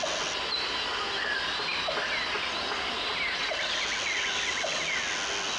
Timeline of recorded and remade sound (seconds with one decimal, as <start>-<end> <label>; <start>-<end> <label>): 0.0-5.6 recorded